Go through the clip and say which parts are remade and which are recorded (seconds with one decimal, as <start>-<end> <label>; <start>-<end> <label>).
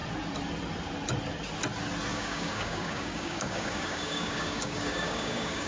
0.0-2.1 recorded; 2.1-5.7 remade